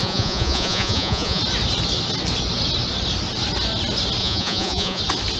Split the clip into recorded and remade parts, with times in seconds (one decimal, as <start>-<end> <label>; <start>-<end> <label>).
0.0-1.4 remade; 1.4-4.2 recorded; 4.2-5.0 remade; 5.0-5.4 recorded